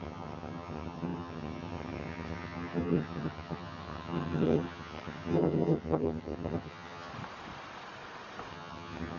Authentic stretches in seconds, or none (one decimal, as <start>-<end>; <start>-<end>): 7.1-8.5